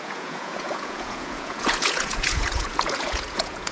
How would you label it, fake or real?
fake